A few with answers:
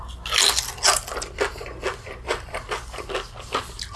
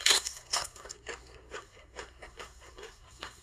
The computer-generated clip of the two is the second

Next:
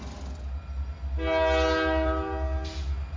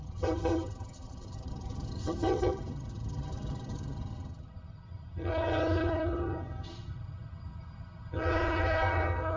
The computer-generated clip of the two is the second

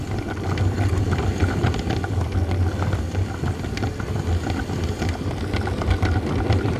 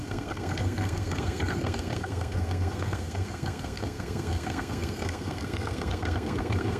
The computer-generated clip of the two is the second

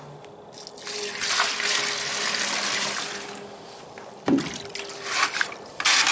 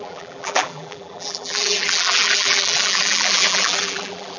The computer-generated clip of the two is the second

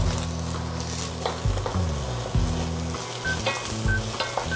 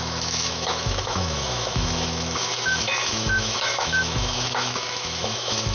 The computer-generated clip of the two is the second